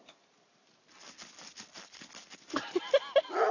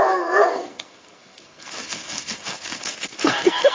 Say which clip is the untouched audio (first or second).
first